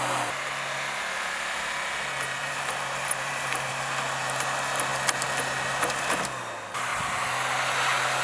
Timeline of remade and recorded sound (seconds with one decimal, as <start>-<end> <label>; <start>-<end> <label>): 0.0-2.4 recorded; 2.4-3.7 remade; 3.7-8.2 recorded